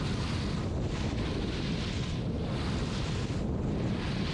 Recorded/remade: recorded